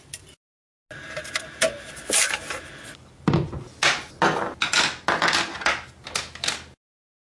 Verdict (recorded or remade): recorded